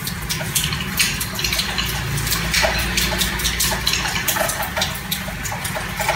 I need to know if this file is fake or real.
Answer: real